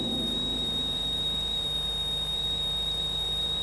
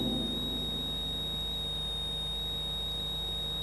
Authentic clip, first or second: second